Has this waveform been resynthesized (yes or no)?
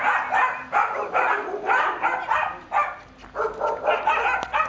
no